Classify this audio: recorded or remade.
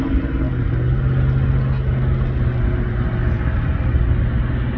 recorded